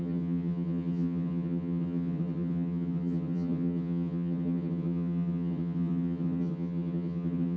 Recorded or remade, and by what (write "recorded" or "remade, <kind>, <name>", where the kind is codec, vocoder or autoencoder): remade, vocoder, HiFi-GAN